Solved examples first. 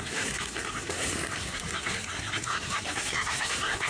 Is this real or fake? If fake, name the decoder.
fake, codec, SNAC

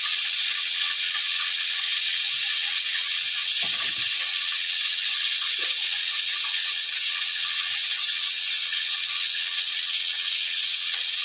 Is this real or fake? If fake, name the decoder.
fake, vocoder, WaveNeXt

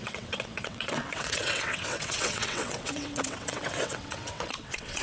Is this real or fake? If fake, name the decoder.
fake, vocoder, WaveNeXt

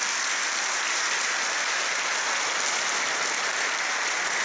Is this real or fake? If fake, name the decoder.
real